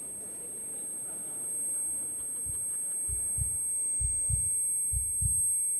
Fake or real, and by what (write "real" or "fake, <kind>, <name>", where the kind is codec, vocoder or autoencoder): real